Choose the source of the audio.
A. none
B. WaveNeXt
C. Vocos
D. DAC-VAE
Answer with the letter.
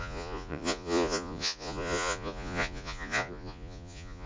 C